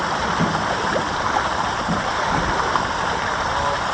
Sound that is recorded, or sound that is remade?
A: recorded